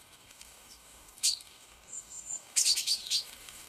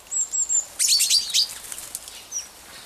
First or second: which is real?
second